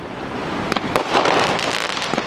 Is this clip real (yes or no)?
yes